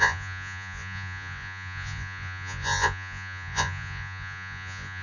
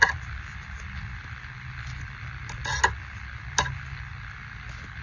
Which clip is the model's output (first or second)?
first